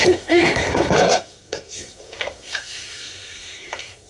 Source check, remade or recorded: remade